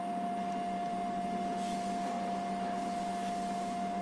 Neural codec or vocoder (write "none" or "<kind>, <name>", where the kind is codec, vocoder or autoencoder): none